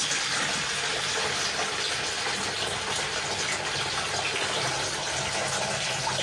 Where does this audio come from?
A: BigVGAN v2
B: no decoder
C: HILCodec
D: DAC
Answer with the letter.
B